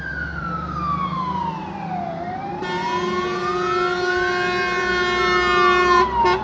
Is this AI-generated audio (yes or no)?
no